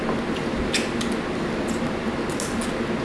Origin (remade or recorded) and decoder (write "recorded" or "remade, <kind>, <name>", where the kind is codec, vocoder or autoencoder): recorded